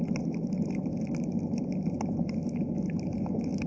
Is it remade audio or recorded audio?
remade